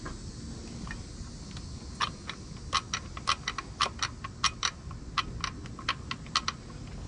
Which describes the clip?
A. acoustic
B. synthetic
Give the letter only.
A